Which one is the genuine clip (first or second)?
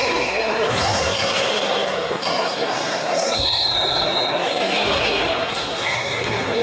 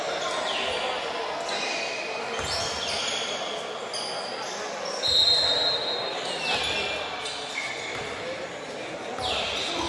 second